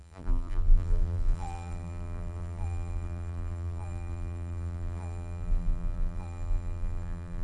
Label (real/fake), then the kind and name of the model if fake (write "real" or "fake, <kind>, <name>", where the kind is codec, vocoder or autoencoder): fake, vocoder, BigVGAN v2